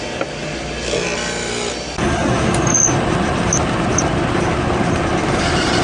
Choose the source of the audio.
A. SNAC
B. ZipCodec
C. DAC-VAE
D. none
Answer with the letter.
D